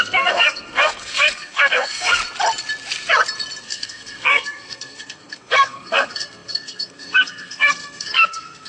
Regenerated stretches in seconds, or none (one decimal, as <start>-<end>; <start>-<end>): 0.0-2.2; 3.6-8.7